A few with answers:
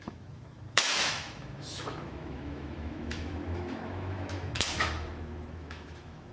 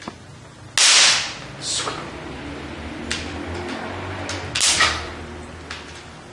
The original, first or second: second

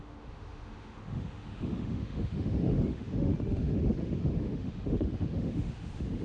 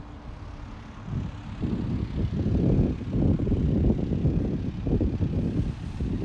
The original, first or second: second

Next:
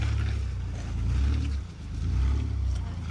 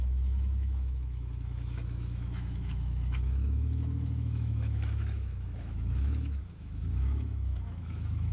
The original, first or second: first